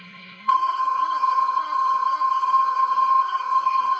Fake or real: fake